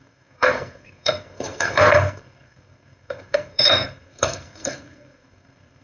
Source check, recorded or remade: remade